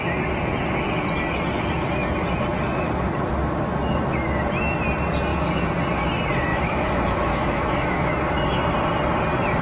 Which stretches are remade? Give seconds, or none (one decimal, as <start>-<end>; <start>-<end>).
6.5-8.6